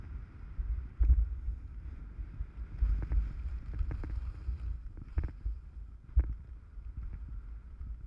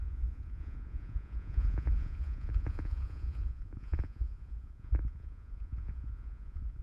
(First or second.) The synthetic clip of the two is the second